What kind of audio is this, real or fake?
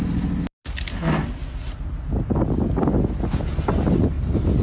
real